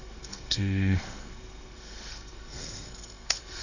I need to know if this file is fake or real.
fake